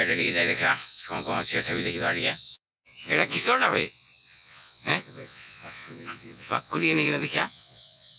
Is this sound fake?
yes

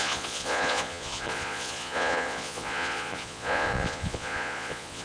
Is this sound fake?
yes